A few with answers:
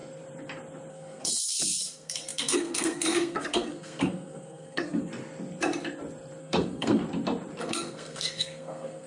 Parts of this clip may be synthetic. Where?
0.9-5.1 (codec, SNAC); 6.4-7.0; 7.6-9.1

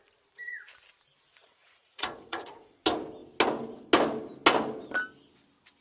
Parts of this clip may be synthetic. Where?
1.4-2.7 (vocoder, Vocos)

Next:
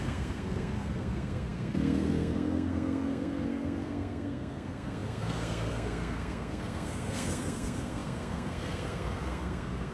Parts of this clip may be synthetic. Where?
0.0-9.9 (codec, SNAC)

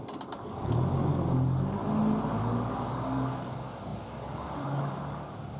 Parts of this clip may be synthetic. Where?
0.0-1.8 (codec, DAC); 2.4-5.6